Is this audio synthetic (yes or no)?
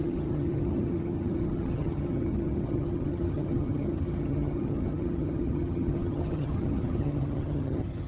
yes